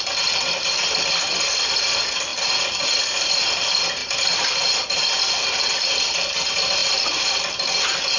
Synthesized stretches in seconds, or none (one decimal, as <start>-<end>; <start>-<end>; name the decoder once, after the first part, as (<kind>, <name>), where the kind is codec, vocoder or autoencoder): 4.0-5.0 (vocoder, BigVGAN v2); 6.8-7.4